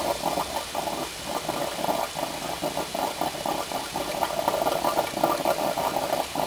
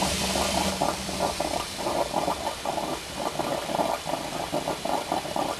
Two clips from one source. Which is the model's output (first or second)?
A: second